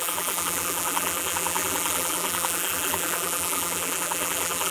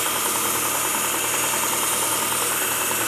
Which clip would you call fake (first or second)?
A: first